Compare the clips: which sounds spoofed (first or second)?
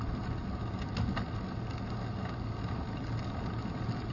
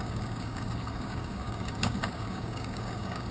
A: second